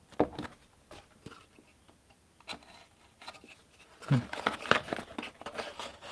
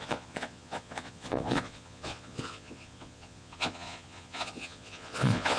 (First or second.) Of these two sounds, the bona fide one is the first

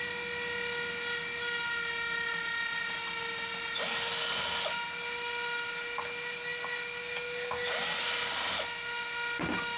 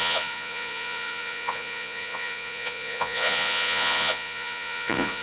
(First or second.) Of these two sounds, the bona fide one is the first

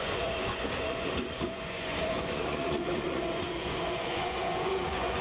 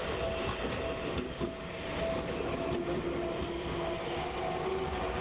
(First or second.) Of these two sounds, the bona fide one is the second